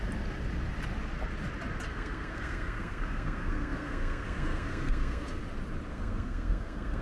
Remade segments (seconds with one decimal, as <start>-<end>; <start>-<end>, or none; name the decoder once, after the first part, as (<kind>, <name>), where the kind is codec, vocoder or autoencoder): 1.9-5.4 (codec, SNAC); 5.9-7.0